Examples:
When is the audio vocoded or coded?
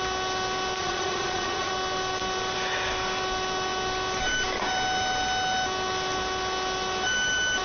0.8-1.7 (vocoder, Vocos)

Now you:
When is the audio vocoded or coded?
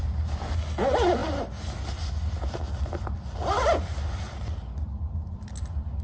none